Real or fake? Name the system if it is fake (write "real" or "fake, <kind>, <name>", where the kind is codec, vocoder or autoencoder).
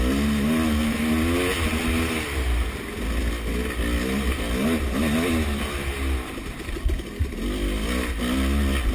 real